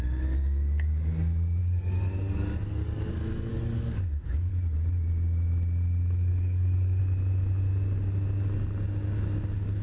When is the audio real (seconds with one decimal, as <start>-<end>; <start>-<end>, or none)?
0.0-1.6; 3.1-3.5; 4.5-6.3; 7.0-9.8